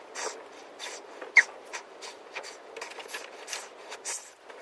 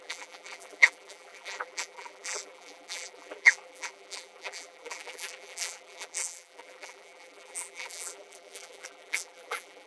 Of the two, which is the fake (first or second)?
second